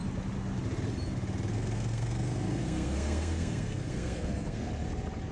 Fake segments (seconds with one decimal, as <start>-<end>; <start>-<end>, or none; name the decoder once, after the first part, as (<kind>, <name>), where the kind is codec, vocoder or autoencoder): 1.5-4.7 (codec, SNAC)